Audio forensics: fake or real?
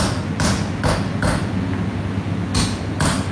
real